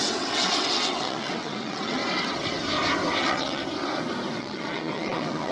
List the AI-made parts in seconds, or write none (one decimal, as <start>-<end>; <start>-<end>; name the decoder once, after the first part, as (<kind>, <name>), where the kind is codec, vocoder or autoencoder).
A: 0.0-2.0 (vocoder, WaveNeXt); 3.2-3.6; 4.4-5.5